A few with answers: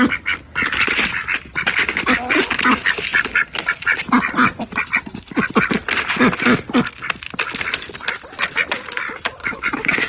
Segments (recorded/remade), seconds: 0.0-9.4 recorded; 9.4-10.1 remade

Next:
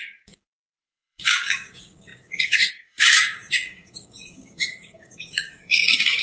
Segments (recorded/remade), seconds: 0.0-6.2 remade

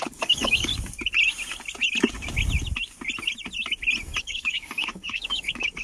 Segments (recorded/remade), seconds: 0.0-0.7 remade; 0.7-4.2 recorded; 4.2-5.8 remade

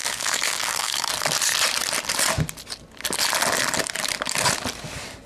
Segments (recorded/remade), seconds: 0.0-1.1 remade; 1.1-5.3 recorded